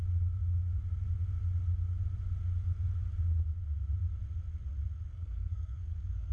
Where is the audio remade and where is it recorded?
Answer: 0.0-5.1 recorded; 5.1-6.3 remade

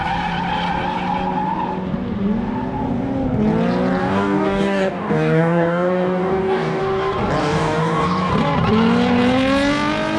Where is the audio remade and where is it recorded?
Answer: 0.0-4.0 recorded; 4.0-6.8 remade; 6.8-7.4 recorded; 7.4-8.3 remade; 8.3-10.2 recorded

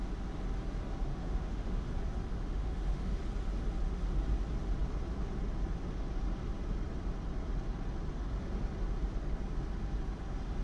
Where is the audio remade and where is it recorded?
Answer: 0.0-1.1 recorded; 1.1-1.9 remade; 1.9-2.3 recorded; 2.3-3.2 remade; 3.2-10.6 recorded

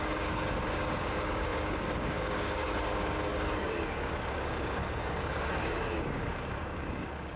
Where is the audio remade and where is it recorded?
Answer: 0.0-7.4 remade

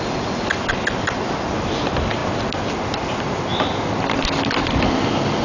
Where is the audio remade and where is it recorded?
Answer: 0.0-5.4 recorded

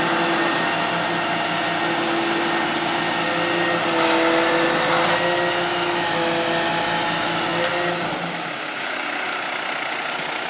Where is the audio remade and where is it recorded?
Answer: 0.0-10.5 recorded